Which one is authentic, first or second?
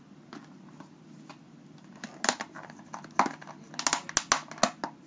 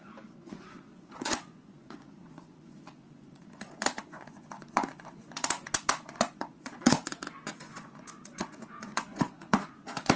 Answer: first